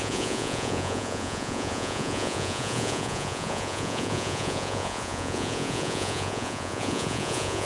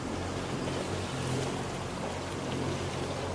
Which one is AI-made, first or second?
first